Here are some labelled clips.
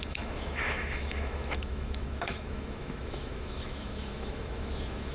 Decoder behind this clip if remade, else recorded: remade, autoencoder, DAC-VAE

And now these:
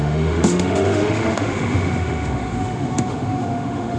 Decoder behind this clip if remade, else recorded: remade, autoencoder, DAC-VAE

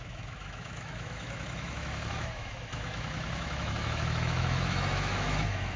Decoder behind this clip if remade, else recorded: remade, autoencoder, DAC-VAE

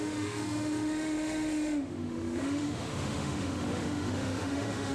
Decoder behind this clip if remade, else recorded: remade, autoencoder, DAC-VAE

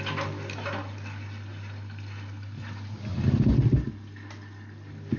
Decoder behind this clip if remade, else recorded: recorded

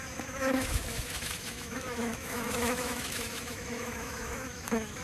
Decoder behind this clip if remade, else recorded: remade, autoencoder, DAC-VAE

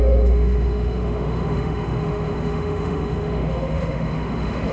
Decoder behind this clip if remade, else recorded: remade, autoencoder, DAC-VAE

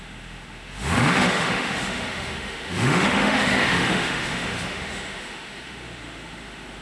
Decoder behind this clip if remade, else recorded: remade, autoencoder, DAC-VAE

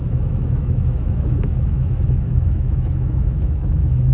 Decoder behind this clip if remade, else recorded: remade, autoencoder, DAC-VAE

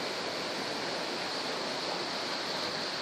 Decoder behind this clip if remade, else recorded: recorded